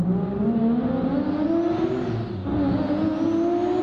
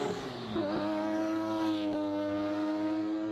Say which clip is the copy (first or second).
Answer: second